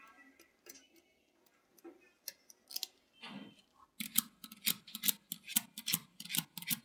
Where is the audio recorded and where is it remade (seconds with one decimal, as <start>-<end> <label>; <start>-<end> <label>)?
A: 0.0-6.8 recorded